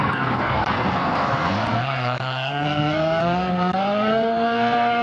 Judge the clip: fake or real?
fake